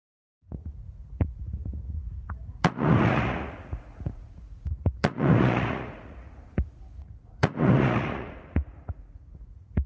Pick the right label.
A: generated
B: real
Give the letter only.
A